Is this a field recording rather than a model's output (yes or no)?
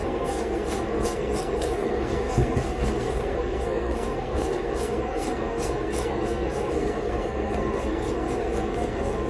no